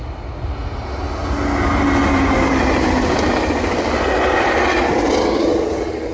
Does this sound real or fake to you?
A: real